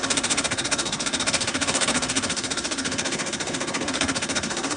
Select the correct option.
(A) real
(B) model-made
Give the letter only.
B